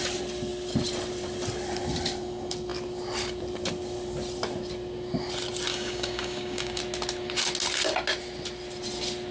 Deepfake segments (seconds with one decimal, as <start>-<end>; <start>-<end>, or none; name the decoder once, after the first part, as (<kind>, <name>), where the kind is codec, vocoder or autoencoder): 5.7-6.8 (codec, DAC)